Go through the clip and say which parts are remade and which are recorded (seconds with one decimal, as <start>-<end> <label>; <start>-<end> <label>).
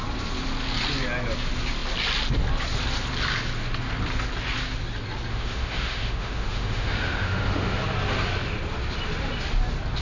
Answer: 0.0-5.3 recorded; 5.3-7.8 remade; 7.8-10.0 recorded